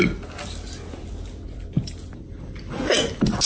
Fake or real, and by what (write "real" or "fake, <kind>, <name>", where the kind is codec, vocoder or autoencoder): real